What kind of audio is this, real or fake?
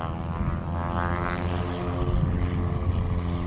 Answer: real